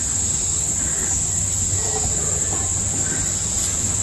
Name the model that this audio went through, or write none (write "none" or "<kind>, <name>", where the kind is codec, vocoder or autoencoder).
none